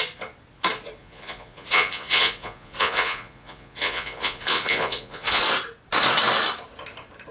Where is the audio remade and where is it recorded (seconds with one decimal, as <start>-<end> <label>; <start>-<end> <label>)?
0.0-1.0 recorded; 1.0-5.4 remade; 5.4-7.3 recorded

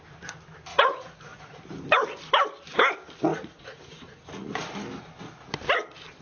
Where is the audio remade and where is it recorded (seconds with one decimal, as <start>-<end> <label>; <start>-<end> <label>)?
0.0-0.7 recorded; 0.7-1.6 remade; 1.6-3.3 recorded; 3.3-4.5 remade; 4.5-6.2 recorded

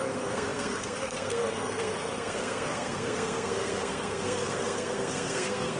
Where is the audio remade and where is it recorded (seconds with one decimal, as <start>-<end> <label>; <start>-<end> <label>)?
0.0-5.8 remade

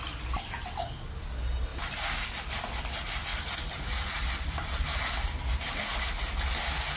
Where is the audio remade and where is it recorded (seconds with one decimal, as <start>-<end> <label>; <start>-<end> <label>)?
0.0-3.3 recorded; 3.3-5.0 remade; 5.0-7.0 recorded

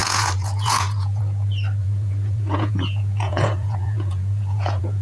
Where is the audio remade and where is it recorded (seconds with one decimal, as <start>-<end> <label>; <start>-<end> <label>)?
0.0-1.2 remade; 1.2-1.8 recorded; 1.8-5.0 remade

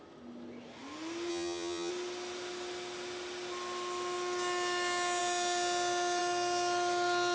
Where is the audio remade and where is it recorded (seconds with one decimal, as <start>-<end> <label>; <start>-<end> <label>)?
0.0-1.3 recorded; 1.3-1.9 remade; 1.9-7.3 recorded

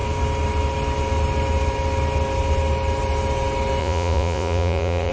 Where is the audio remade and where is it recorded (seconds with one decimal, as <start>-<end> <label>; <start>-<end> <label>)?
0.0-3.8 recorded; 3.8-5.1 remade

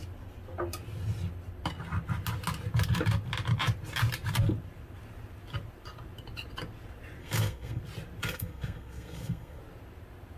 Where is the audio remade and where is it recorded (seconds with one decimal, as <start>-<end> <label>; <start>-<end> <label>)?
0.0-7.2 recorded; 7.2-7.8 remade; 7.8-8.2 recorded; 8.2-9.6 remade; 9.6-10.4 recorded